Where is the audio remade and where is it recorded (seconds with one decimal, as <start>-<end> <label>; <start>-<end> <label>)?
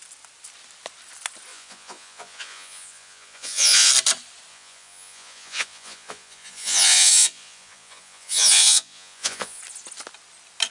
0.0-1.5 recorded; 1.5-3.9 remade; 3.9-4.5 recorded; 4.5-9.6 remade; 9.6-10.7 recorded